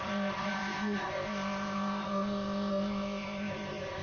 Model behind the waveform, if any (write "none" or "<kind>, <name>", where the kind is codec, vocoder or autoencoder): codec, ZipCodec